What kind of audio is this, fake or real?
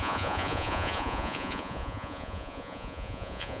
fake